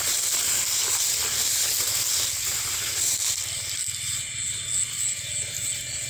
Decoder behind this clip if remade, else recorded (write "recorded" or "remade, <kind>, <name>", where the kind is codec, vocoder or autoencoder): recorded